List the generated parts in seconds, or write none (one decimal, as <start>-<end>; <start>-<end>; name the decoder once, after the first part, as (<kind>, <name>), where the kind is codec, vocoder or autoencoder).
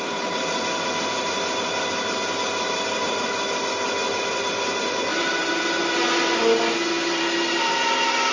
none